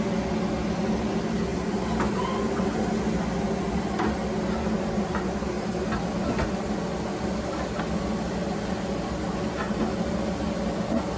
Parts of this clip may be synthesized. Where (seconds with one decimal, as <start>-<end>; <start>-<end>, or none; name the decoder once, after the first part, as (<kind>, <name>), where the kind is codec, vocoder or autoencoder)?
none